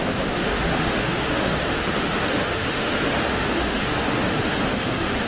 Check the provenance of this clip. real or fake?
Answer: fake